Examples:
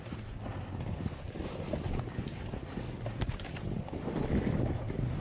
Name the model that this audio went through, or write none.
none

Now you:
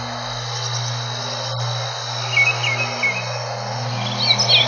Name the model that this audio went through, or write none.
none